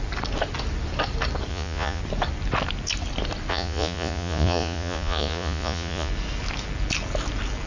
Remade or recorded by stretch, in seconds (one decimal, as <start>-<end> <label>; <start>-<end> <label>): 0.0-1.5 recorded; 1.5-2.0 remade; 2.0-3.5 recorded; 3.5-6.1 remade; 6.1-7.7 recorded